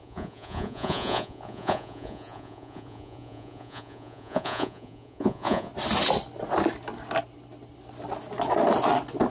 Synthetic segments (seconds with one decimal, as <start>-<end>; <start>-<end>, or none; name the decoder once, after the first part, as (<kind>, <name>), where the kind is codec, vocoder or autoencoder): 0.0-5.7 (vocoder, Vocos)